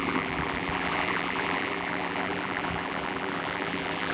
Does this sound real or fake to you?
fake